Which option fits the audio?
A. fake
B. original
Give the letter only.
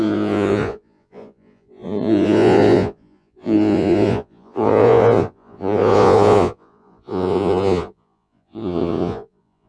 A